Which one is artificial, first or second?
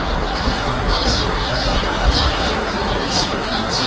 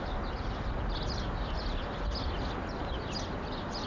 first